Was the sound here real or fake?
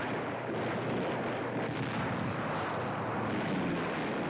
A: real